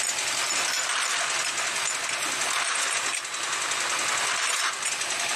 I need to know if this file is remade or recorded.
recorded